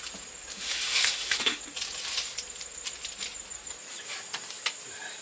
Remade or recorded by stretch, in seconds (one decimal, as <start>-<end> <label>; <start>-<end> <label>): 0.0-0.5 recorded; 0.5-1.6 remade; 1.6-5.2 recorded